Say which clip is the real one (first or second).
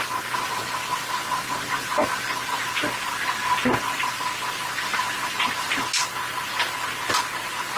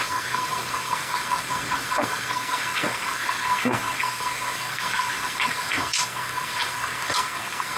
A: first